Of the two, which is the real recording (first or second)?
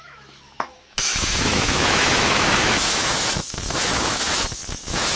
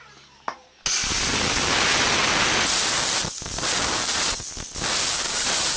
second